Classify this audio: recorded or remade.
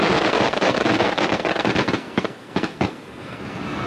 remade